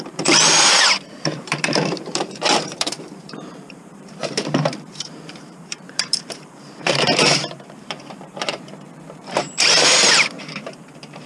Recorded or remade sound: remade